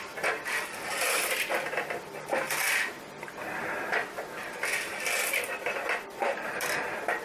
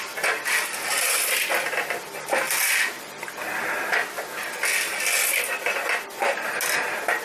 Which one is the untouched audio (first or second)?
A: second